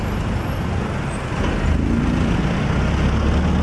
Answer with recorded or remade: recorded